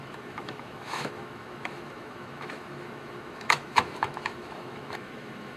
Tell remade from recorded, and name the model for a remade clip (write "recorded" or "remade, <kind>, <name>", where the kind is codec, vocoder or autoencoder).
remade, autoencoder, DAC-VAE